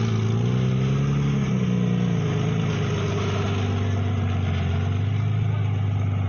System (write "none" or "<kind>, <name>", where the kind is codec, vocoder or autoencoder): none